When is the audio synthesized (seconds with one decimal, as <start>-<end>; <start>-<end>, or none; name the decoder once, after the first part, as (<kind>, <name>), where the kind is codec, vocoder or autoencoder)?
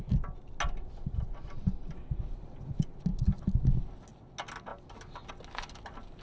none